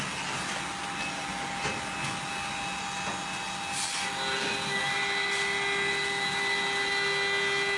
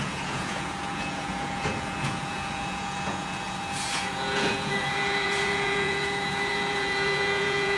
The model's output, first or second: second